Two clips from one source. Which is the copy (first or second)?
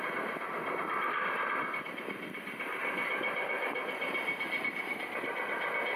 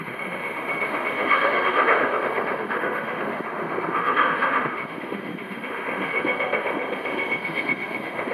second